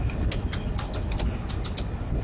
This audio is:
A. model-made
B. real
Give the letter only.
B